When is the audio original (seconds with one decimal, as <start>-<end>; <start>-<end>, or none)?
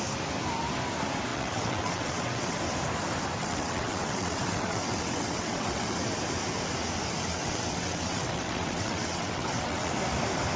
0.0-1.3; 2.6-3.4; 6.0-7.3; 9.9-10.6